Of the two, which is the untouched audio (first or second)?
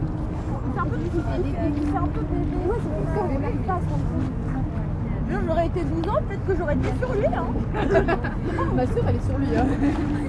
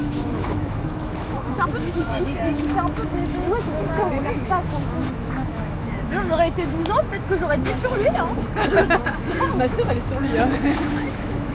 first